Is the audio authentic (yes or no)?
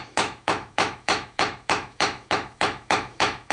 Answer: no